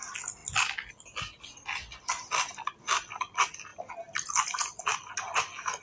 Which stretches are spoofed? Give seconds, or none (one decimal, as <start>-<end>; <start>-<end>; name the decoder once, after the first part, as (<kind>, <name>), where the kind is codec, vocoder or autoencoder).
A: none